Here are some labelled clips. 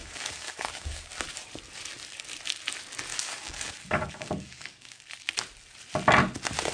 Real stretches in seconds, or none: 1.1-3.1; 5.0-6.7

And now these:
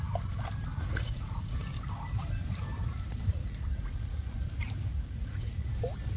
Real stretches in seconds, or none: 0.0-0.7; 1.6-3.3; 4.3-4.9; 5.7-6.2

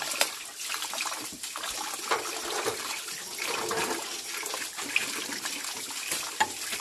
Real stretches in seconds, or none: 0.0-6.8

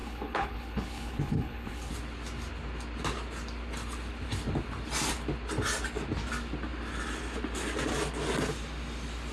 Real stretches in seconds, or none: 1.9-9.3

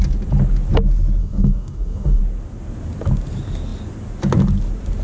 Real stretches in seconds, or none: 0.0-1.2; 2.2-5.0

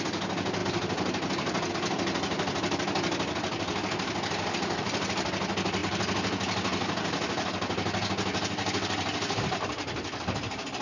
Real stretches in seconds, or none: 0.0-10.8

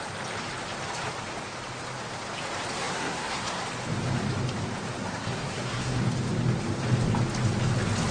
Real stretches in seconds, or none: 0.0-2.8; 3.6-5.0; 6.0-8.1